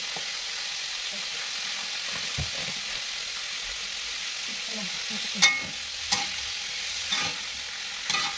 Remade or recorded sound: recorded